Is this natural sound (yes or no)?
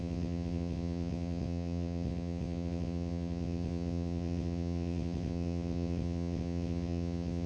no